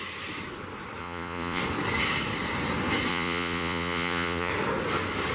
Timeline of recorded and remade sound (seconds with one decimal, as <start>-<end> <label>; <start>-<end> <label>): 0.0-1.0 recorded; 1.0-1.6 remade; 1.6-3.1 recorded; 3.1-4.5 remade; 4.5-5.3 recorded